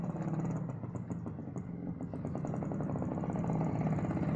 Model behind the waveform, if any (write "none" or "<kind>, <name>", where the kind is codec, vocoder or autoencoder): none